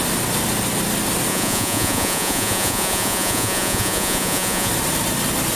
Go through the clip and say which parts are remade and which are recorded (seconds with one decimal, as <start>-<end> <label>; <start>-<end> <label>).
0.0-1.3 recorded; 1.3-4.7 remade; 4.7-5.6 recorded